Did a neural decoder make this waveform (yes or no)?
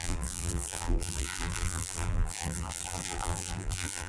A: yes